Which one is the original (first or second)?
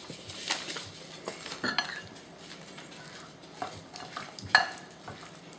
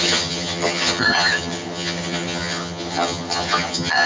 first